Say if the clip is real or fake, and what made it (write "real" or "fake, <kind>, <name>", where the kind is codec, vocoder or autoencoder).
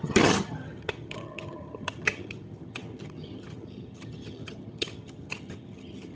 fake, vocoder, HiFi-GAN